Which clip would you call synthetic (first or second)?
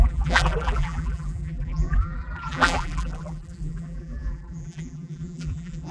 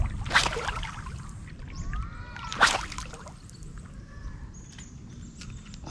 first